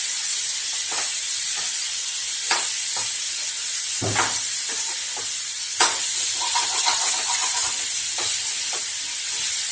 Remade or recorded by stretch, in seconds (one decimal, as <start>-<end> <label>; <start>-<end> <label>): 0.0-9.7 recorded